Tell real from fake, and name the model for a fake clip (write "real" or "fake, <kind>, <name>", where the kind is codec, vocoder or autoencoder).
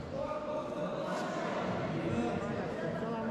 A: real